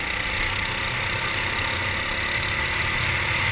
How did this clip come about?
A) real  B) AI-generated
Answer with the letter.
A